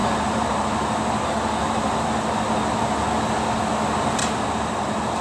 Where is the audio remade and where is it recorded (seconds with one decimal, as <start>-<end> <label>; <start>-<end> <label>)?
0.0-1.2 remade; 1.2-4.2 recorded; 4.2-5.2 remade